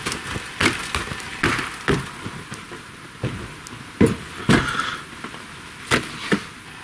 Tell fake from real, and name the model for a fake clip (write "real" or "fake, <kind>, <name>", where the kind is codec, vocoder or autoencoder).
real